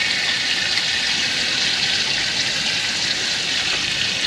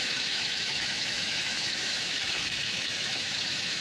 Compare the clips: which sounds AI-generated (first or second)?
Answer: second